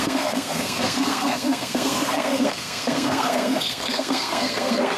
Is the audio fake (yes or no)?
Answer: yes